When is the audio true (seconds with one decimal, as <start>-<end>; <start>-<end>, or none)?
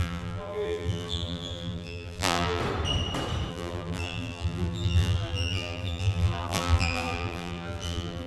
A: 2.6-3.5